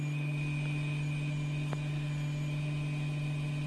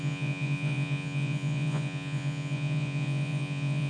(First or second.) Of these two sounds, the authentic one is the first